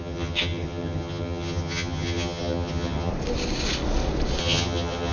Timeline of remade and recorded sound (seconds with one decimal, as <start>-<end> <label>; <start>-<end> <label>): 0.0-3.1 remade; 3.1-4.4 recorded; 4.4-5.1 remade